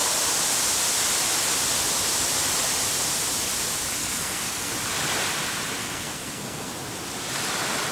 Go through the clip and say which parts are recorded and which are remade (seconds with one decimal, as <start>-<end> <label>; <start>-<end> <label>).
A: 0.0-4.0 recorded; 4.0-4.7 remade; 4.7-5.8 recorded; 5.8-6.7 remade; 6.7-7.9 recorded